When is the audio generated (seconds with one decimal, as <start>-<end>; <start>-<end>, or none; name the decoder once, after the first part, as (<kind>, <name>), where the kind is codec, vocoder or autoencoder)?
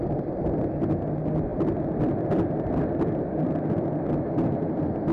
none